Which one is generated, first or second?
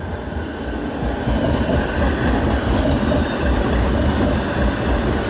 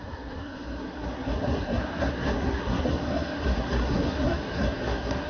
second